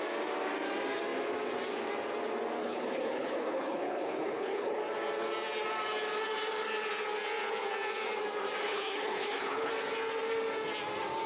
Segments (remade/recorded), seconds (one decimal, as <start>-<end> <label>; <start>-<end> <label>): 0.0-2.6 recorded; 2.6-4.8 remade; 4.8-8.6 recorded; 8.6-9.7 remade; 9.7-11.3 recorded